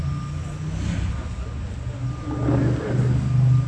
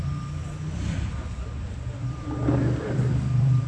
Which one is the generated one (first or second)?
second